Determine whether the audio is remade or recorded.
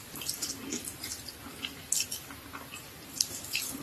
remade